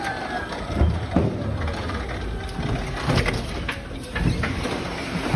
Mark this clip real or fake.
real